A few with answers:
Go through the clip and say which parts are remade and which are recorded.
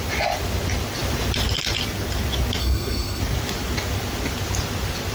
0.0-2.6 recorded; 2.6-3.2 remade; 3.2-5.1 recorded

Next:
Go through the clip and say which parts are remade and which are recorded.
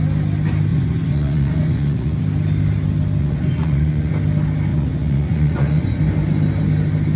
0.0-0.7 recorded; 0.7-2.2 remade; 2.2-3.2 recorded; 3.2-4.1 remade; 4.1-4.7 recorded; 4.7-6.0 remade; 6.0-7.2 recorded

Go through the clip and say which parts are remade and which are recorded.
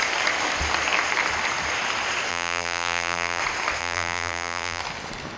0.0-2.3 recorded; 2.3-3.4 remade; 3.4-3.8 recorded; 3.8-4.8 remade; 4.8-5.4 recorded